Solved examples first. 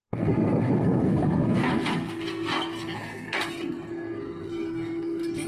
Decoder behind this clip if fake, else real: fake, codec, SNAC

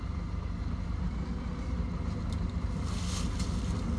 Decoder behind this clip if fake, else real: real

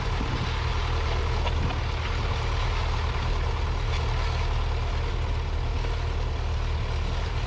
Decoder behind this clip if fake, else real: real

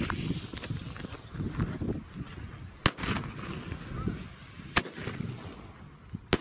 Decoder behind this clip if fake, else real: real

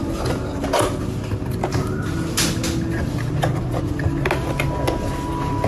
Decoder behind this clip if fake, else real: real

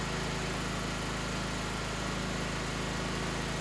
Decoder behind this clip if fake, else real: real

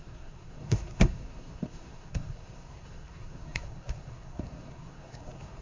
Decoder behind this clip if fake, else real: fake, codec, SNAC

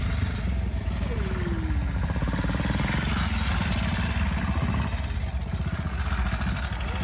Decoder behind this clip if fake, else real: real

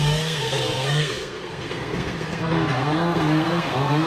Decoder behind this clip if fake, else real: fake, codec, SNAC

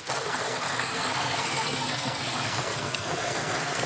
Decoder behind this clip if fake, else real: fake, codec, SNAC